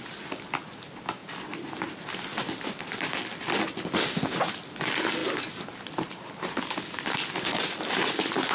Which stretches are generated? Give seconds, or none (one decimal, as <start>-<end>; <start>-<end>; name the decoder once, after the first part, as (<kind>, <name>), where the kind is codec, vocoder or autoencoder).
none